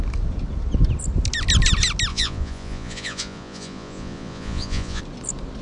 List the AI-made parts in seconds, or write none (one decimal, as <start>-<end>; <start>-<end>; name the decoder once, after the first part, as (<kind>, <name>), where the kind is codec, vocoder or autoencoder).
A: 2.1-5.0 (vocoder, Vocos)